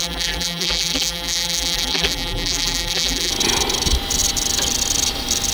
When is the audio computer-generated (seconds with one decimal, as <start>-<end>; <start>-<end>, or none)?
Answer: 0.0-3.3